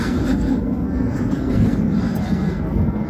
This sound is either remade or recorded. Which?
remade